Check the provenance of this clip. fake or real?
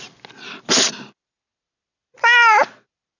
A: real